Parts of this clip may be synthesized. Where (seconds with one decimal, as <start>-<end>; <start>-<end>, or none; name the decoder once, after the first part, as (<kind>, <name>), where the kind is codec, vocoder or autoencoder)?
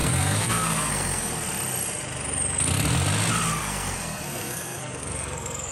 0.0-1.3 (codec, SNAC); 3.6-5.7